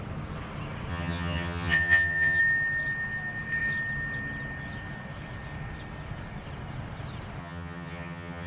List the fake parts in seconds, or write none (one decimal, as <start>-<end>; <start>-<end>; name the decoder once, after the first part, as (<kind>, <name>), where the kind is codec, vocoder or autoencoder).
0.9-2.4 (vocoder, HiFi-GAN); 7.4-8.5